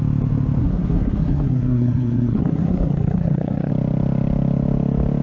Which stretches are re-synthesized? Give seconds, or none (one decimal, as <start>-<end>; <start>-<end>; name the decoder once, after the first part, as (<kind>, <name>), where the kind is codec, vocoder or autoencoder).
0.6-3.7 (codec, SNAC)